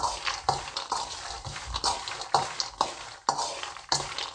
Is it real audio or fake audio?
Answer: fake